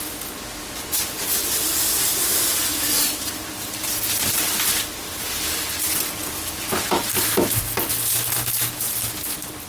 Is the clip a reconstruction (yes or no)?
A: no